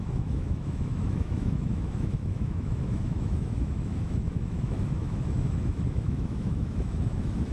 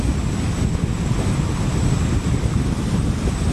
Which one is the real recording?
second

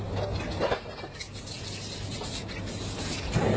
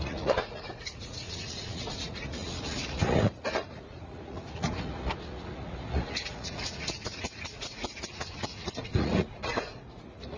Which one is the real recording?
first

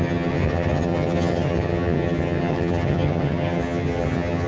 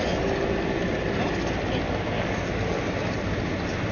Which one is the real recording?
second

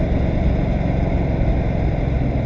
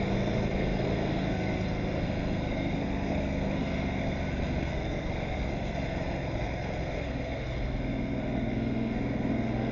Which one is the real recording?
first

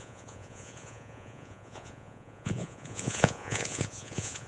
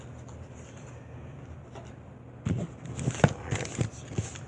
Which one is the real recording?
second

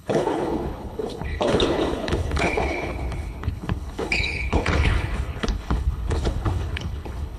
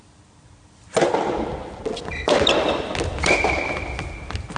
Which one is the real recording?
second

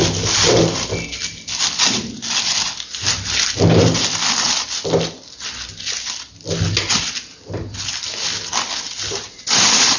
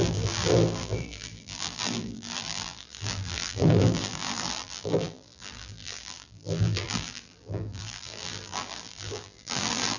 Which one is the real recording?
first